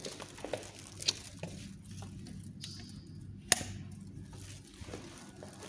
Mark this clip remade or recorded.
recorded